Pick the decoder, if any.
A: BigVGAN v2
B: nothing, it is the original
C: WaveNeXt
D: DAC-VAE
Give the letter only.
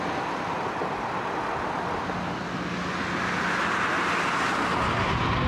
B